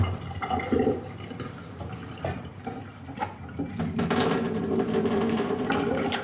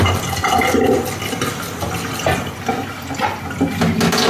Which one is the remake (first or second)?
first